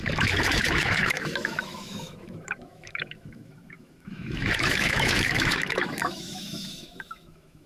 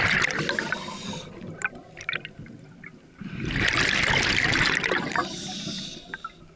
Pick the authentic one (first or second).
second